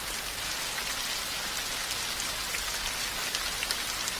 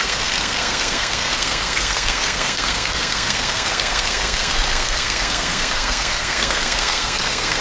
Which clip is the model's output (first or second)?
second